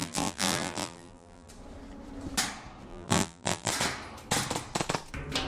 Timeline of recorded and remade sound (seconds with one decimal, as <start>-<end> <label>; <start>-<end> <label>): 0.0-1.5 remade; 1.5-2.9 recorded; 2.9-3.7 remade; 3.7-5.5 recorded